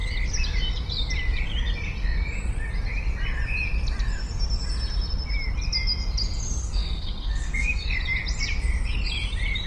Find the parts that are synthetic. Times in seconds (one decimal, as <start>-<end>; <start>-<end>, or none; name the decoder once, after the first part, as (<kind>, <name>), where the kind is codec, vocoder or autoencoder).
6.6-7.9 (codec, SNAC)